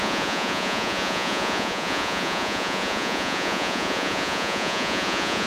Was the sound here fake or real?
fake